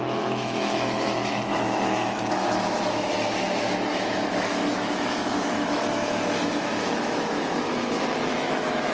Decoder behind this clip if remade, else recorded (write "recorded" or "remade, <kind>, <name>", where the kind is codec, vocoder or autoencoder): remade, autoencoder, DAC-VAE